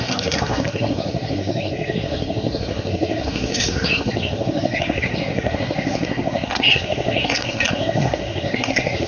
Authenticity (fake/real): fake